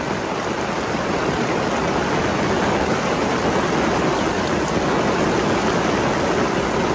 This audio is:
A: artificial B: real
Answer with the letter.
B